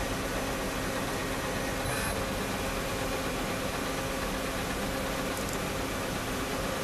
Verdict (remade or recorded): recorded